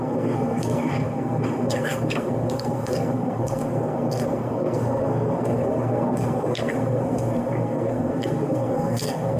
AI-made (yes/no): yes